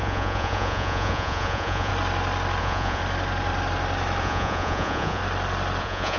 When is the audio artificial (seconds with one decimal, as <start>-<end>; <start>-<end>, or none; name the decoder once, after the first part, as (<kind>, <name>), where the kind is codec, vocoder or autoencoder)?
0.0-1.9 (vocoder, Vocos); 2.6-3.0; 4.2-5.2; 5.8-6.2